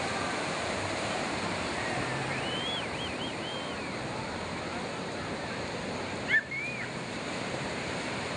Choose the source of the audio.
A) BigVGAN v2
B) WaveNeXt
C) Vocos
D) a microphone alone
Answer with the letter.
A